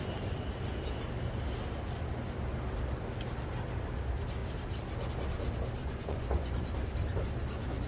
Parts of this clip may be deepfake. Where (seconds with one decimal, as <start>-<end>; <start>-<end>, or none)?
5.8-6.5